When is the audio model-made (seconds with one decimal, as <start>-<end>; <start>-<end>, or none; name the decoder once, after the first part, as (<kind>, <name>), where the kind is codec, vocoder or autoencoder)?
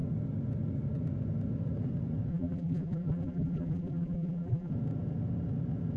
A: 2.3-4.7 (vocoder, BigVGAN v2)